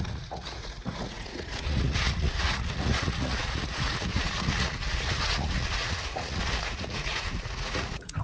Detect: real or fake fake